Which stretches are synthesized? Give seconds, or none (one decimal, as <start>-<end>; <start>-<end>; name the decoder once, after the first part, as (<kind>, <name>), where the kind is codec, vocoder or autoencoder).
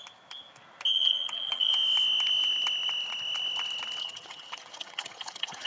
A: 0.9-1.7 (vocoder, HiFi-GAN); 4.0-5.7